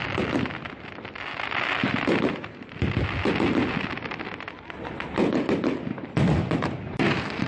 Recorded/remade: recorded